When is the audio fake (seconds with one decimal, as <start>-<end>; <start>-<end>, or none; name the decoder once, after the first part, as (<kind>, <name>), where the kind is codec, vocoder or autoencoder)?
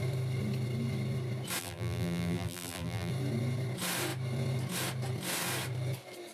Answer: 1.6-3.1 (vocoder, BigVGAN v2)